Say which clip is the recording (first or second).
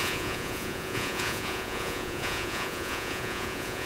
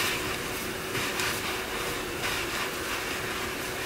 second